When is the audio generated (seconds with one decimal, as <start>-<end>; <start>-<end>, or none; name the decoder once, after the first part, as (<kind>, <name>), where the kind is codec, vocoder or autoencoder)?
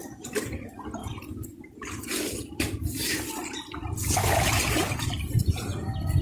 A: 0.0-5.7 (vocoder, BigVGAN v2)